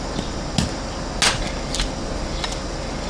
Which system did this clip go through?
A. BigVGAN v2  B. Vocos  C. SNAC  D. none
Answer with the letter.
D